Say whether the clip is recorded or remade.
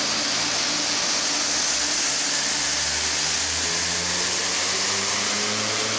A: recorded